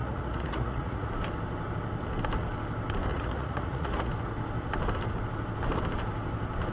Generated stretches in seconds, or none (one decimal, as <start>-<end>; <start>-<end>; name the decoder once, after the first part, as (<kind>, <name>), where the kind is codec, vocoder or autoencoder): 0.0-1.1 (vocoder, Vocos); 3.1-4.1